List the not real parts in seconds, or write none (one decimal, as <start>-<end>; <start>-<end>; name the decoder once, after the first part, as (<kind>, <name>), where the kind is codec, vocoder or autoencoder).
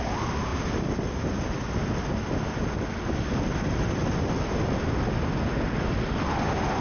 none